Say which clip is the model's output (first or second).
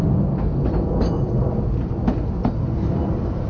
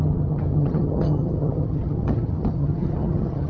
second